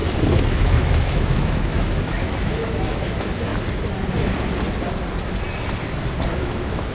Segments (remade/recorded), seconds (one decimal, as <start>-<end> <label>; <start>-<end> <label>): 0.0-3.5 remade; 3.5-6.3 recorded; 6.3-6.9 remade